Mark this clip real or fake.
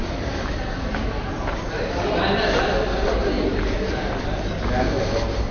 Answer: real